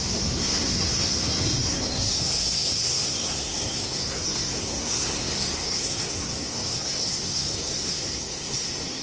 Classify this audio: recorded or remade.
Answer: remade